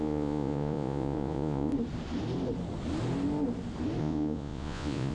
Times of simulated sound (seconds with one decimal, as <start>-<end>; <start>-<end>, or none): 0.0-1.7; 4.0-5.1